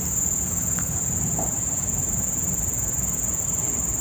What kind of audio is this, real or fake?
fake